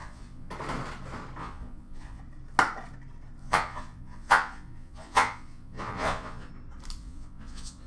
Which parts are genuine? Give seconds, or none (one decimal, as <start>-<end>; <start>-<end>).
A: 0.5-1.4; 2.2-3.4; 6.5-7.0